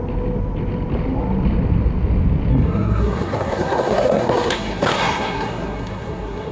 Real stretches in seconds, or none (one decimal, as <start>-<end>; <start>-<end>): 0.0-2.5